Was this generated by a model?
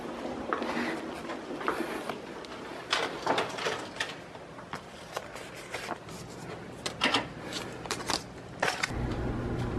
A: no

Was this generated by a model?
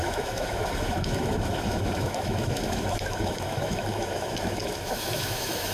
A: yes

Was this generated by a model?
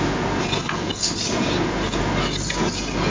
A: no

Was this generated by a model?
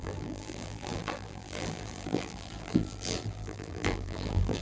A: yes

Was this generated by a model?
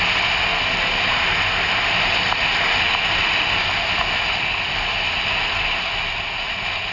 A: no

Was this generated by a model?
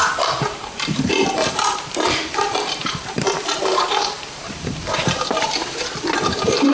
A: yes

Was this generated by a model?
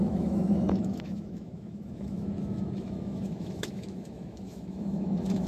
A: yes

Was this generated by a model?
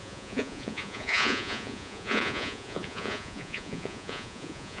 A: yes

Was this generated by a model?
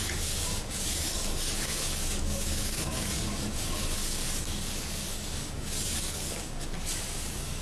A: yes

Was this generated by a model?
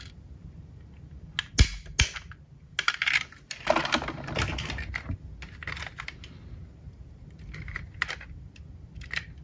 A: no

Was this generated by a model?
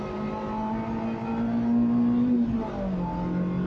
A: no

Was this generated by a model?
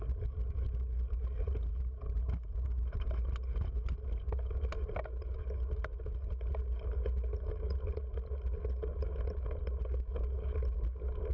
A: no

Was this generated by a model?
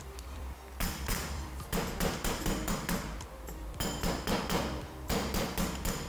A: yes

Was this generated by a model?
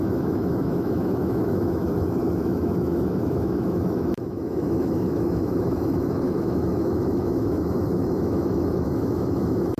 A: yes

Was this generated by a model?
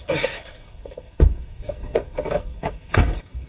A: yes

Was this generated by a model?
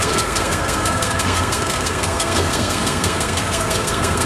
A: yes